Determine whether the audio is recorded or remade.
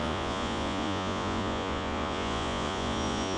remade